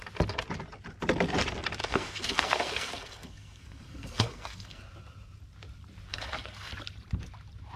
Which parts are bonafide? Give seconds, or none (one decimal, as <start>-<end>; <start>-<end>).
0.0-1.8; 4.8-6.1; 6.7-7.8